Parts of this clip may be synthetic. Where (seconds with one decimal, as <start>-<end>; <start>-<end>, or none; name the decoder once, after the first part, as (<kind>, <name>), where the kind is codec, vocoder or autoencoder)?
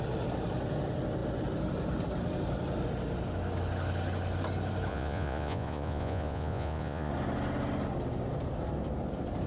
4.9-7.1 (vocoder, Vocos)